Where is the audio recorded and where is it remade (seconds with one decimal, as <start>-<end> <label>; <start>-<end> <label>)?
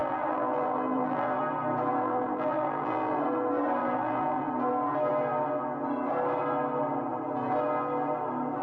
0.0-1.4 remade; 1.4-2.0 recorded; 2.0-3.2 remade; 3.2-3.8 recorded; 3.8-4.5 remade; 4.5-8.6 recorded